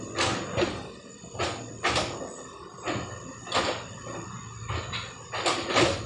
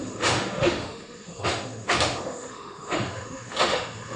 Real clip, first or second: first